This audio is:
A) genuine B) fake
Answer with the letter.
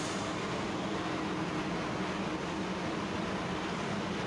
A